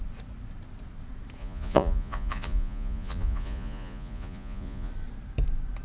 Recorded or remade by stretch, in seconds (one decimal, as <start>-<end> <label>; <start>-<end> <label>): 0.0-1.4 recorded; 1.4-4.9 remade; 4.9-5.8 recorded